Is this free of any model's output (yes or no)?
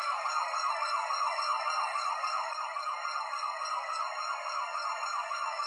no